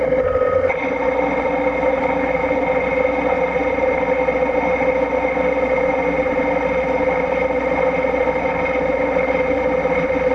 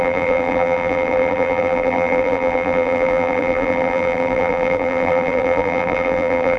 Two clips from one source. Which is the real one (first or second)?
first